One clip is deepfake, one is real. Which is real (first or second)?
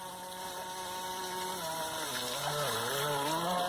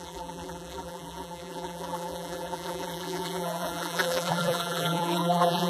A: first